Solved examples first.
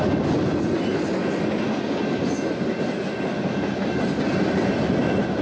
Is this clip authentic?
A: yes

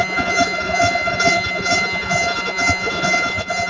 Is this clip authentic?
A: no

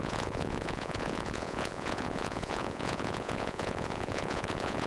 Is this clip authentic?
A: no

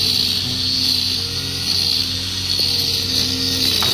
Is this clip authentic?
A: yes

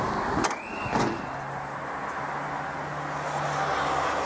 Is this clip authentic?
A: yes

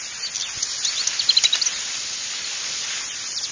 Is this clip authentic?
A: yes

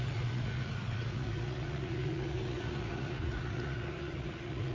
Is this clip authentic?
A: no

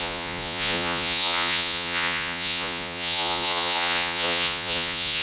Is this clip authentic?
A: no